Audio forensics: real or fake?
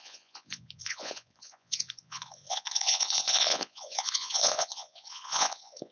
fake